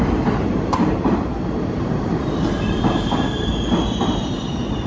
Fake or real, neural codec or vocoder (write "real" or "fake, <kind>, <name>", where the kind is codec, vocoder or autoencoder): fake, vocoder, BigVGAN v2